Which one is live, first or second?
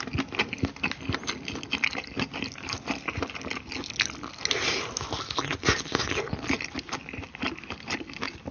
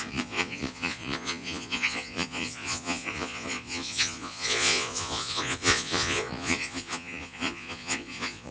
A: first